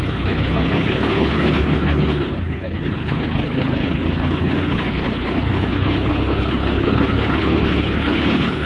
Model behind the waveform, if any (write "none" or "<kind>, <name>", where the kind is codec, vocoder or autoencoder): codec, HILCodec